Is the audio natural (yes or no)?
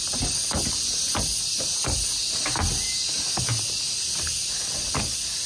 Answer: yes